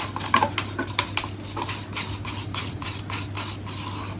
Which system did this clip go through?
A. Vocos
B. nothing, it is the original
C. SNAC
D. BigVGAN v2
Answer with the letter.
B